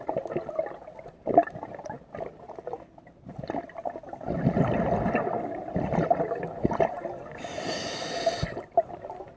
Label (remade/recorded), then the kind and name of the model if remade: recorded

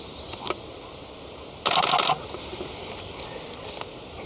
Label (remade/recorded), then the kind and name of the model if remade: recorded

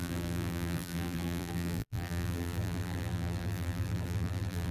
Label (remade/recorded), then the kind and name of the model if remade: remade, vocoder, BigVGAN v2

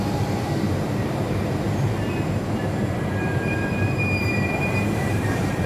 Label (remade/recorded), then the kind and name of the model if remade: remade, vocoder, BigVGAN v2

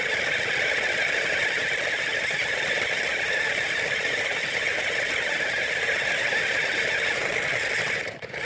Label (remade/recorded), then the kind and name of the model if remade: remade, vocoder, BigVGAN v2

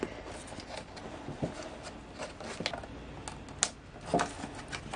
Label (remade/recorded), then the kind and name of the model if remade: recorded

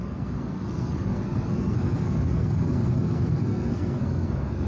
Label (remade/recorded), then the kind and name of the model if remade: remade, codec, SNAC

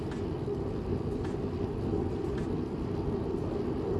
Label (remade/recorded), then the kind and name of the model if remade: recorded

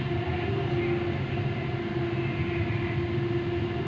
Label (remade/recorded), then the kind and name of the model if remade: recorded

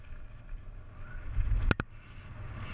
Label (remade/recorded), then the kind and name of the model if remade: recorded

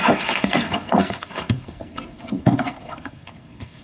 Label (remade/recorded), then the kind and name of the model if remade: remade, codec, SNAC